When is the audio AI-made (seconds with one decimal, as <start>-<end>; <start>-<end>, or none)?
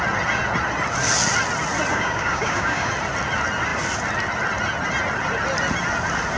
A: 1.9-2.9